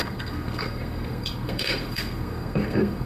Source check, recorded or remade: remade